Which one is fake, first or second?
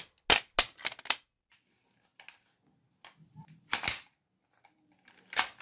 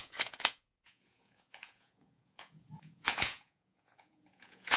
second